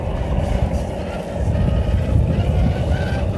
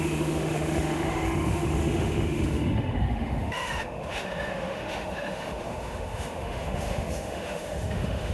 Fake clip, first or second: second